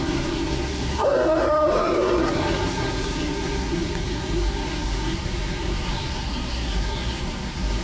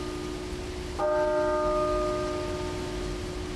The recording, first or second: second